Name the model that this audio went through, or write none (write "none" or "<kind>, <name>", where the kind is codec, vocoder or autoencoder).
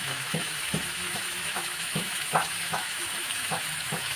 autoencoder, DAC-VAE